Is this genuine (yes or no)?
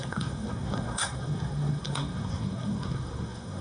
no